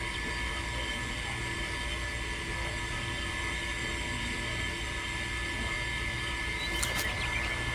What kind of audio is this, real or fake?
real